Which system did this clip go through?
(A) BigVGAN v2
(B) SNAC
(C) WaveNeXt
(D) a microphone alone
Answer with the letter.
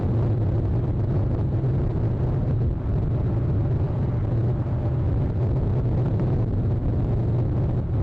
A